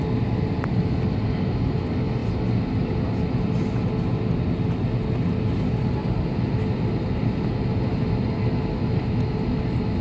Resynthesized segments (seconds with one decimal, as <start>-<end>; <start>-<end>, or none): none